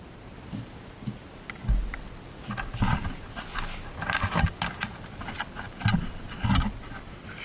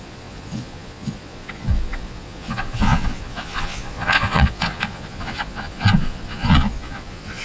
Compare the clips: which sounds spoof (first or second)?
second